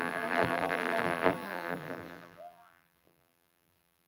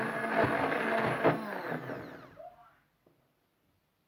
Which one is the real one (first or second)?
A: second